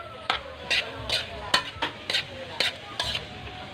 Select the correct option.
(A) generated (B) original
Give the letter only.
B